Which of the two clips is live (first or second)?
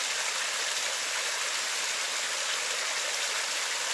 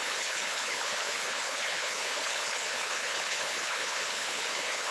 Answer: first